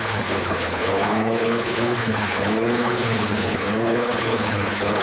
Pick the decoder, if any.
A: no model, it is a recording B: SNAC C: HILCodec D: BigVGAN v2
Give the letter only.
C